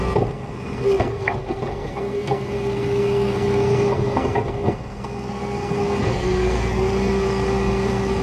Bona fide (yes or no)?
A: no